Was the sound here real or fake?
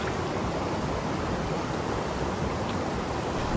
real